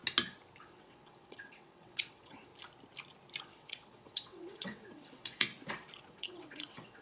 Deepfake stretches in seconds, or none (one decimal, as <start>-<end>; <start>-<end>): 0.6-2.5; 3.4-5.5; 6.1-7.0